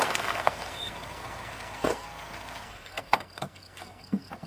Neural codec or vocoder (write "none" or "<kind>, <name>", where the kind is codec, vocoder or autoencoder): codec, SNAC